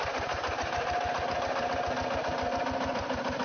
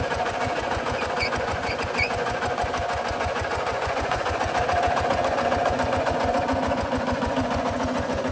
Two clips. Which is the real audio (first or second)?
first